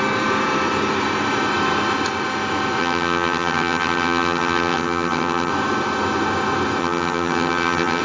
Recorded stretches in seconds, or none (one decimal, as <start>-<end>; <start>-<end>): 0.0-2.8; 5.5-6.8